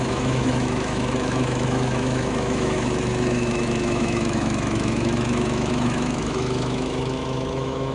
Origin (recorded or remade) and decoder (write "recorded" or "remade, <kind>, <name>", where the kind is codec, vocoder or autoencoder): remade, autoencoder, DAC-VAE